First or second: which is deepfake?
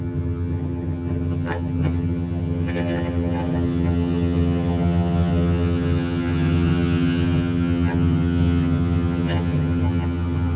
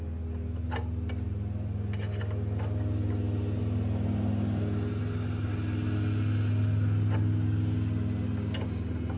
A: first